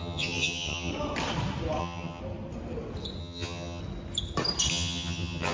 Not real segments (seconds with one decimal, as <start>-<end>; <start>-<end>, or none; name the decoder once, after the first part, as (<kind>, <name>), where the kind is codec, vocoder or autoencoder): 0.0-0.9 (vocoder, HiFi-GAN); 1.8-2.2; 3.2-3.8; 4.7-5.5